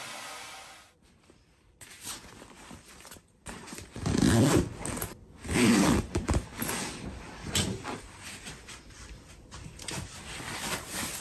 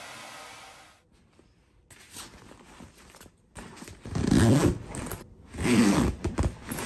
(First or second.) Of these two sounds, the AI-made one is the first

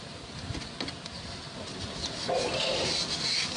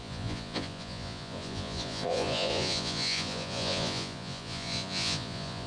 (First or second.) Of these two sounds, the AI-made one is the second